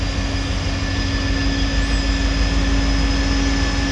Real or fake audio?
real